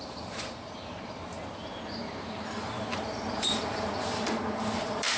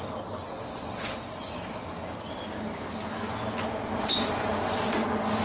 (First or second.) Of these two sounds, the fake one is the first